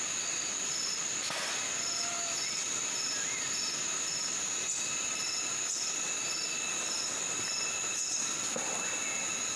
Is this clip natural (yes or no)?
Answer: yes